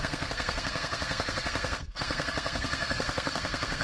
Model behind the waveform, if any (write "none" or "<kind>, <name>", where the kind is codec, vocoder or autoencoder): codec, SNAC